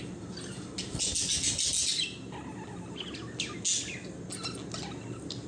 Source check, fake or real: real